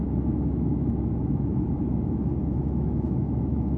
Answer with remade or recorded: remade